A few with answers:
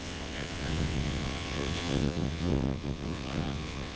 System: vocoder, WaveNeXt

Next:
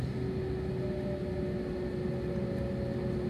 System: none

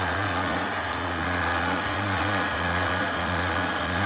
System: vocoder, Vocos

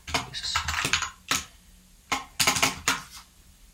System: none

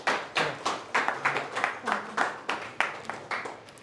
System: none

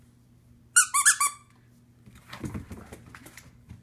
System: none